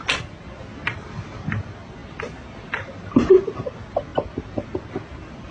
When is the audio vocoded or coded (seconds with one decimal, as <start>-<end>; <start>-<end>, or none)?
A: 2.0-3.4